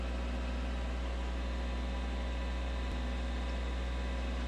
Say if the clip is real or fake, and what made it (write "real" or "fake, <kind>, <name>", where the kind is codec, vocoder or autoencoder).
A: real